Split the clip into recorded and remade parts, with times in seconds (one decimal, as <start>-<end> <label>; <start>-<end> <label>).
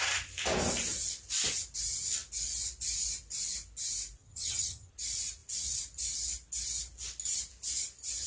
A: 0.0-4.2 recorded; 4.2-4.9 remade; 4.9-8.3 recorded